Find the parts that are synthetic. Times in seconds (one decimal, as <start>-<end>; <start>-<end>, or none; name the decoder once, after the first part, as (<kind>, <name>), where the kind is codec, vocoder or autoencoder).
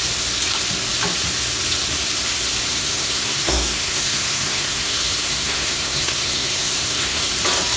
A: 2.8-7.3 (codec, SNAC)